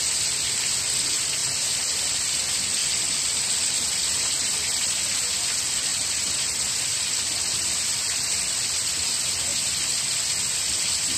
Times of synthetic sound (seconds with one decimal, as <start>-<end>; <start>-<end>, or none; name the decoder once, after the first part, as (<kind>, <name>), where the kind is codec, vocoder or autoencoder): 1.4-2.2 (vocoder, BigVGAN v2); 5.9-7.8; 9.5-10.0